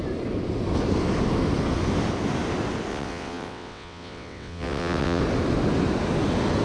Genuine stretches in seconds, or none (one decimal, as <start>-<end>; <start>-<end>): 0.0-2.9; 5.2-6.6